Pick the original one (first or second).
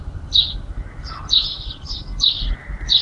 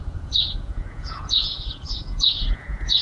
first